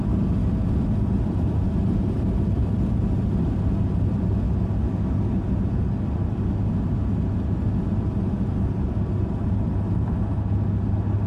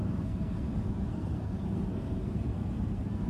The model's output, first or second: second